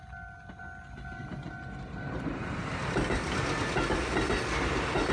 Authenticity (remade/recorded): recorded